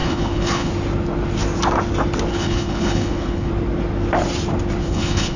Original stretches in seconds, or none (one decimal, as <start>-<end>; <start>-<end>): 0.7-2.3; 3.5-4.8